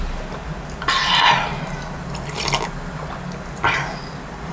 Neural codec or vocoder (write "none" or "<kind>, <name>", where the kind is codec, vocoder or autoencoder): none